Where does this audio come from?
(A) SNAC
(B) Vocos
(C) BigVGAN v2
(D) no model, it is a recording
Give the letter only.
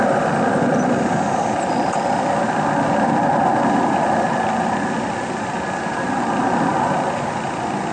D